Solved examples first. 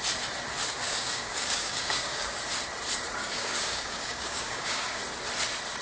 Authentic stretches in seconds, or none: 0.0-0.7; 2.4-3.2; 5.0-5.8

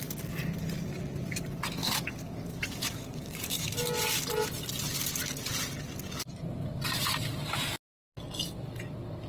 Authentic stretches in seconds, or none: 0.0-1.8; 3.8-9.3

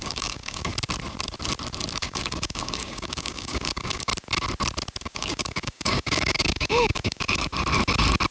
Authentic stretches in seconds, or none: 0.7-2.0; 4.1-5.0; 7.5-8.3

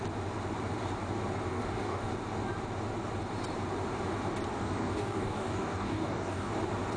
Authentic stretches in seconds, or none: 0.0-1.5; 2.1-4.5; 6.5-7.0

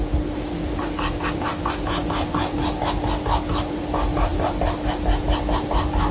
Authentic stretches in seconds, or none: 0.0-6.1

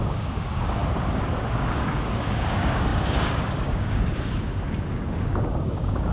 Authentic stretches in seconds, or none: 0.8-1.3